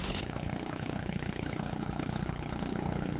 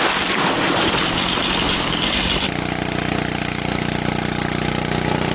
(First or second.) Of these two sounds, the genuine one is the second